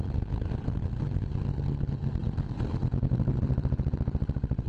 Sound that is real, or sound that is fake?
real